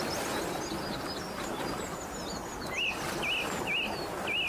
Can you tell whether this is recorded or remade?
recorded